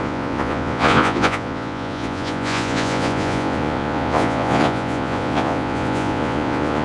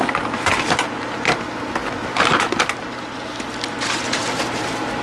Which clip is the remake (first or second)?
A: first